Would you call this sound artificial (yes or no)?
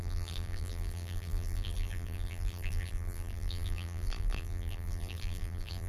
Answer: yes